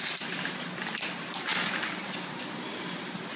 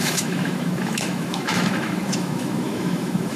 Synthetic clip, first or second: second